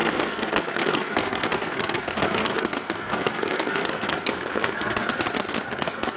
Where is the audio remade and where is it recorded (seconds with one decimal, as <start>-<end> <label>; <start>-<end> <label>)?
0.0-5.1 remade; 5.1-5.7 recorded; 5.7-6.2 remade